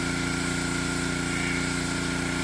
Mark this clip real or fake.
real